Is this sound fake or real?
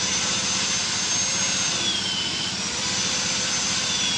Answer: real